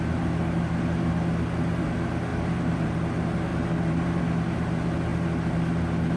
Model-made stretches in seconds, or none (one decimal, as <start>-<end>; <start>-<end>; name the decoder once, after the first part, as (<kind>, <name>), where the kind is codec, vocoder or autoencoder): 2.3-3.1 (vocoder, BigVGAN v2); 3.5-4.2